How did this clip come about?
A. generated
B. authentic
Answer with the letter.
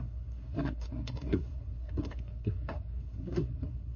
A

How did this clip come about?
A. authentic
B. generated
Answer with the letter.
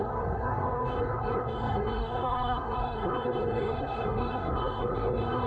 B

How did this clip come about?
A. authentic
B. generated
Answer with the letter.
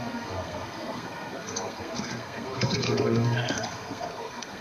B